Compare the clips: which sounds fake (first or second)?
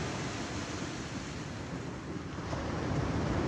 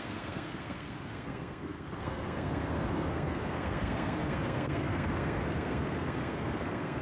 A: second